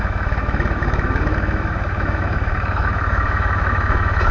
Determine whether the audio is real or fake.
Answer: fake